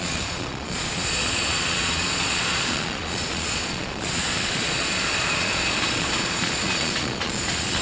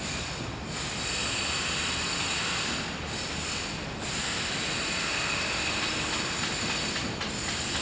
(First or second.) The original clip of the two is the second